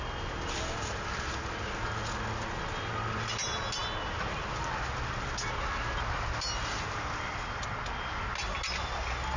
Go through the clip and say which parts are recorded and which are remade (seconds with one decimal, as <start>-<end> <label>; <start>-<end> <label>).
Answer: 0.0-9.4 recorded